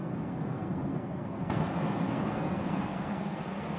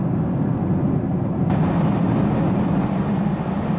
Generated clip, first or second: first